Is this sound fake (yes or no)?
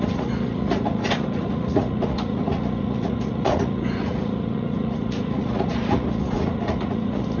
yes